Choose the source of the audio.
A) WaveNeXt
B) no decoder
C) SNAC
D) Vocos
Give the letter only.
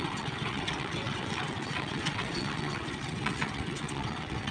A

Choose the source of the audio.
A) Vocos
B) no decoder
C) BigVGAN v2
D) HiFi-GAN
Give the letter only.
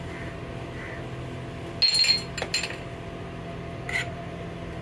B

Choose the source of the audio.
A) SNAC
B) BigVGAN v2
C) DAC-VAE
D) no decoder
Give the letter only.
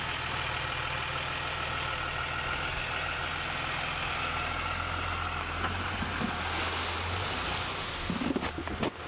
D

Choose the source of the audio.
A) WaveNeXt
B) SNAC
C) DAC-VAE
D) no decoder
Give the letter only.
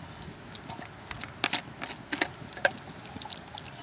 D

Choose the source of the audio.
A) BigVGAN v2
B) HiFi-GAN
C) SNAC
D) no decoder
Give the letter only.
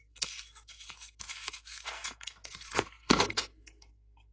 C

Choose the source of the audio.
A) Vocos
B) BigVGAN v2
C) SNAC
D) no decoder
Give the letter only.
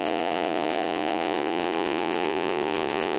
A